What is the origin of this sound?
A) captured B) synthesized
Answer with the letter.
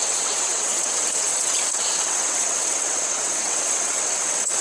B